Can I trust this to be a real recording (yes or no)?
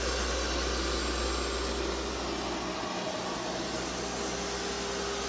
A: yes